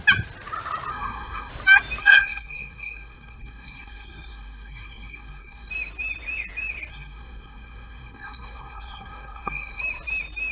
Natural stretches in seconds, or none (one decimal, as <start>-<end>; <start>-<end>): 0.0-0.9; 1.5-2.0; 5.7-6.9; 9.8-10.5